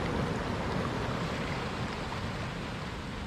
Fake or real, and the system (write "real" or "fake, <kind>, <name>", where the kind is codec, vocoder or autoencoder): real